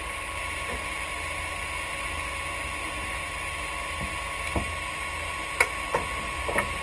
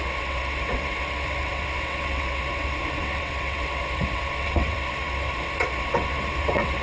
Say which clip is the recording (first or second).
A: first